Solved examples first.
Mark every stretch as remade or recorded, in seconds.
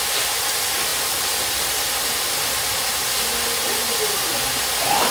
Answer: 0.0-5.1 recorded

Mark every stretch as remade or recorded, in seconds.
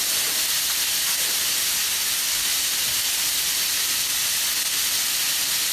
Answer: 0.0-5.7 recorded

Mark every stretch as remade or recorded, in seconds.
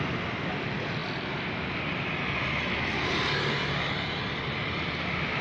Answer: 0.0-5.4 recorded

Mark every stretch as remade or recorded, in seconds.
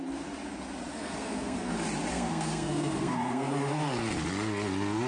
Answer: 0.0-0.9 recorded; 0.9-1.7 remade; 1.7-2.1 recorded; 2.1-3.5 remade; 3.5-5.1 recorded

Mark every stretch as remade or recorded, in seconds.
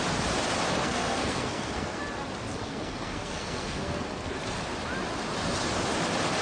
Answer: 0.0-0.8 recorded; 0.8-2.0 remade; 2.0-2.5 recorded; 2.5-4.3 remade; 4.3-6.4 recorded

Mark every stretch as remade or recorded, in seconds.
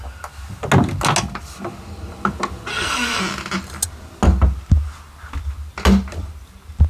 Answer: 0.0-2.7 recorded; 2.7-3.2 remade; 3.2-6.9 recorded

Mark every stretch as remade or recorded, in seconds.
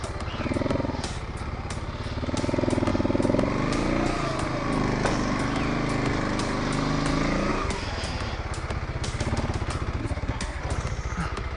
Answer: 0.0-10.0 recorded; 10.0-10.6 remade; 10.6-11.6 recorded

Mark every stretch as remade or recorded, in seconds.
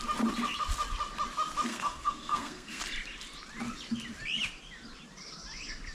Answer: 0.0-1.7 recorded; 1.7-2.8 remade; 2.8-5.9 recorded